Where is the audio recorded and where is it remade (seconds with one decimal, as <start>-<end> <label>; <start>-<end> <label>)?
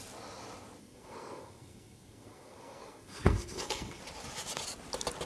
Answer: 0.0-0.8 recorded; 0.8-4.0 remade; 4.0-5.3 recorded